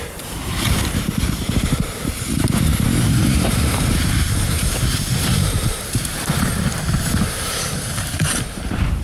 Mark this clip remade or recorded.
remade